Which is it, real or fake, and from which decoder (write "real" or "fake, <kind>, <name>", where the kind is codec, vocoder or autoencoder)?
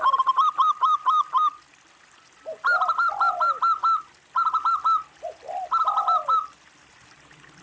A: real